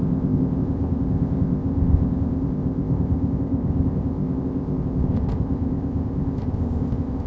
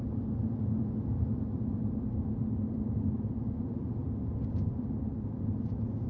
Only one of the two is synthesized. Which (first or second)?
first